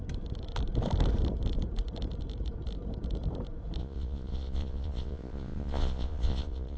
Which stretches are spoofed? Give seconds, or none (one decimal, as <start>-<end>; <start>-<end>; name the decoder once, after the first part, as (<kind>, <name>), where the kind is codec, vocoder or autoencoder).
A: 3.8-6.8 (vocoder, Vocos)